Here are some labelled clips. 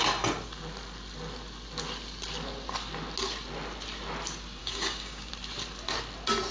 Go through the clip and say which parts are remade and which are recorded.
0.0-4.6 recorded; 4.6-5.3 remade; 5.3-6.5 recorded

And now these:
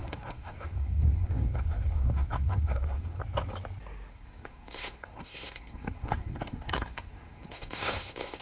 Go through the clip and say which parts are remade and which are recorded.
0.0-3.2 remade; 3.2-4.1 recorded; 4.1-8.4 remade